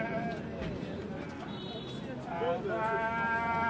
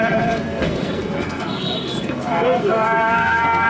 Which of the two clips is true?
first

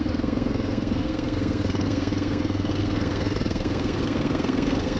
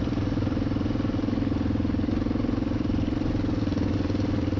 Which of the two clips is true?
second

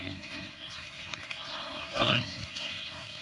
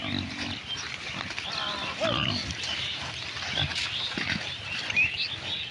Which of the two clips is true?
second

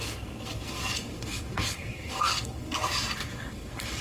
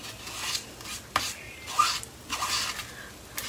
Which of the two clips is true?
second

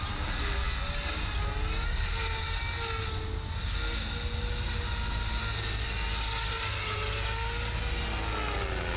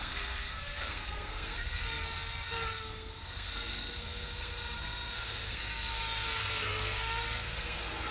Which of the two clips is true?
first